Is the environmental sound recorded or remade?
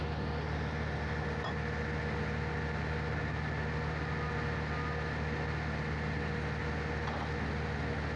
recorded